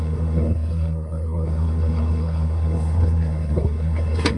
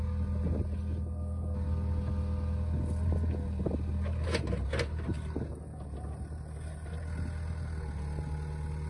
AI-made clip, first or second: first